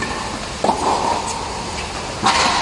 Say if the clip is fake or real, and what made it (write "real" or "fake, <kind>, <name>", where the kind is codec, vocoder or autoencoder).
real